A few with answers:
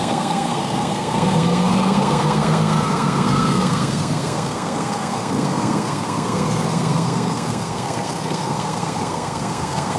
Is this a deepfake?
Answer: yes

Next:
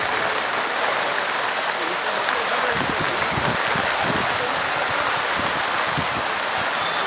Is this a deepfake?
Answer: no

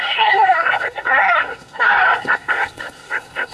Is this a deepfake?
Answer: yes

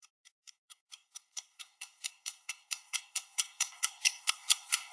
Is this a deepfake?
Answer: yes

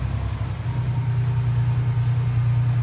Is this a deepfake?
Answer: no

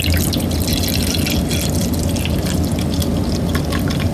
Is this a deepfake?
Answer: no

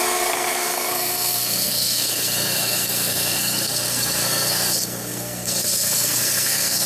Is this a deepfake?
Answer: yes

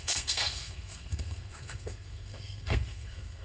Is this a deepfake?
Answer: yes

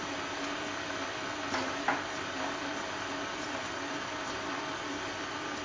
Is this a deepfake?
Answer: no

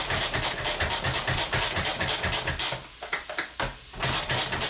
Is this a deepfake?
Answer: no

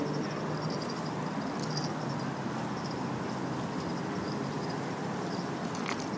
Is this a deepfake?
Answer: no